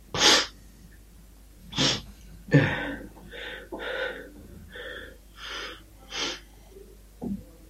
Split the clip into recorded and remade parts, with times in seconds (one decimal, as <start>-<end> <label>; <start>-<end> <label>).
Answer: 0.0-1.6 recorded; 1.6-2.2 remade; 2.2-7.7 recorded